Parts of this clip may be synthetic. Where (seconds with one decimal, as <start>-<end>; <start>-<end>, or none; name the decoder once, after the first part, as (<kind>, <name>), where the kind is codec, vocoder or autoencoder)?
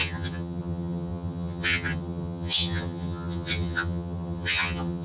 0.0-5.0 (vocoder, HiFi-GAN)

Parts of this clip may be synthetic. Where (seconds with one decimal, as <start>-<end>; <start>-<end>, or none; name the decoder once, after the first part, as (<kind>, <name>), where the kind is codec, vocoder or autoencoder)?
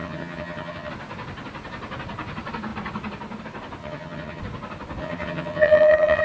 0.0-0.9 (vocoder, HiFi-GAN); 3.8-4.4; 5.0-6.2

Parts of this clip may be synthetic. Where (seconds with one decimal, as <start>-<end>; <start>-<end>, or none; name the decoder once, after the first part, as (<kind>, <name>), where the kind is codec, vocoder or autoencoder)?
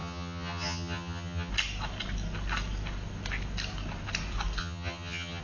0.0-1.5 (vocoder, HiFi-GAN); 4.6-5.4